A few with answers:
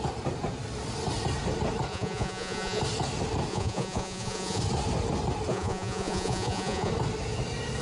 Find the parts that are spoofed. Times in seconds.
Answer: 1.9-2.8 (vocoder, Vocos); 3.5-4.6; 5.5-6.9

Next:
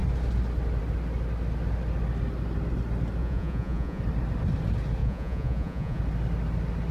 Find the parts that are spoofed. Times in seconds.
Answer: 3.2-4.0 (vocoder, Vocos); 5.0-6.0